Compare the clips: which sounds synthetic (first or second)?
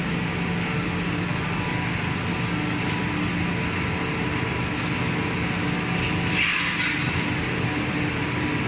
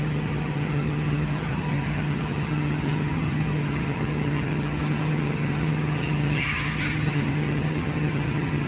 second